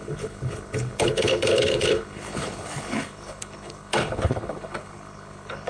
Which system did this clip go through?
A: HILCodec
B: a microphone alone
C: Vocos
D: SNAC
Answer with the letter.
A